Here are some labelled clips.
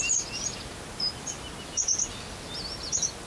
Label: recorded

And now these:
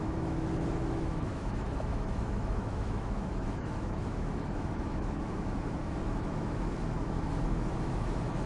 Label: remade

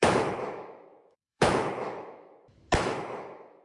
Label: remade